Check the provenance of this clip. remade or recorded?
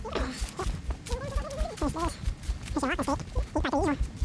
recorded